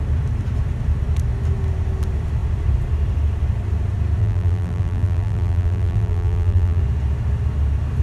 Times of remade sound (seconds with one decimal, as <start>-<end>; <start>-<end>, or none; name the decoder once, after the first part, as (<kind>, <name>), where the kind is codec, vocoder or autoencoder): 4.2-6.8 (vocoder, BigVGAN v2)